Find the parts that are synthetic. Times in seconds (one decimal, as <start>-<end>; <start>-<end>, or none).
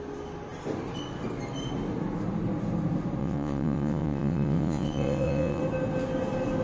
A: 3.2-5.6